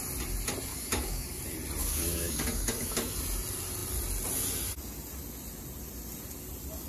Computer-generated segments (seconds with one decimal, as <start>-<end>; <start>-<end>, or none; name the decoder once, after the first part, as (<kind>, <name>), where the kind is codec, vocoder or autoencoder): 0.7-1.4 (codec, DAC); 1.8-3.1